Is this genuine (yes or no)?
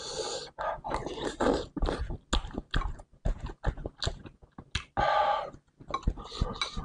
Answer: yes